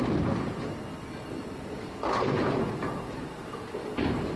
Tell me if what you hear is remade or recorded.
recorded